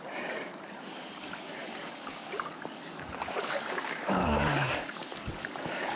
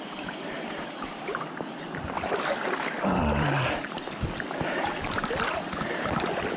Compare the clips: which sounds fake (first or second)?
first